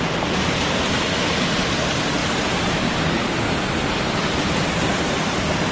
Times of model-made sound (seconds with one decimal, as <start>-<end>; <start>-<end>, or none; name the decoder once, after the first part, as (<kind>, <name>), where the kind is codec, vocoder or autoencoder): none